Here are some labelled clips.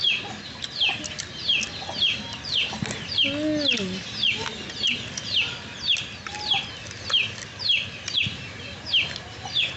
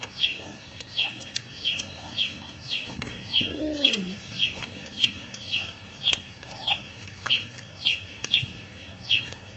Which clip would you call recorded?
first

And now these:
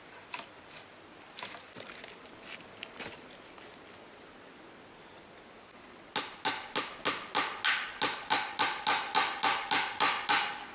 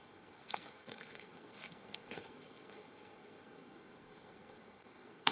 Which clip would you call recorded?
first